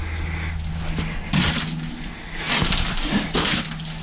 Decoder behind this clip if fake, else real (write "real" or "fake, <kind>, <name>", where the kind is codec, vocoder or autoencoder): real